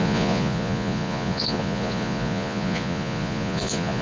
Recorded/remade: remade